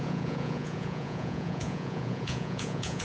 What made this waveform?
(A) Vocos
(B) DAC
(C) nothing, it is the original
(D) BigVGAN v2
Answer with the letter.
A